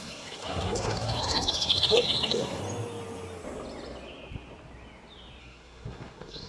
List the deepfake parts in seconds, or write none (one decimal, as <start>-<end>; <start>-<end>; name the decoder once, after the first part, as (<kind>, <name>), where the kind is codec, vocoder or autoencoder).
0.0-2.6 (codec, SNAC); 5.4-6.5